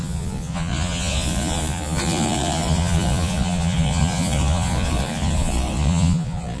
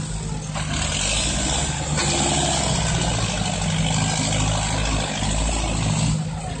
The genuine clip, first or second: second